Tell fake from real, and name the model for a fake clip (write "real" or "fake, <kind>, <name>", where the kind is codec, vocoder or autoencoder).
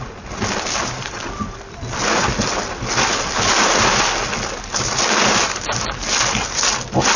real